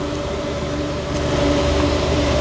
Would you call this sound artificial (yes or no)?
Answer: yes